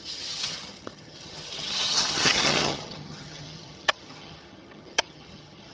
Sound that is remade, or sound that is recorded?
remade